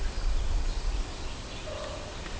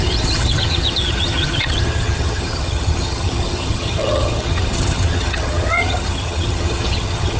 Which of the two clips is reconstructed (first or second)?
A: second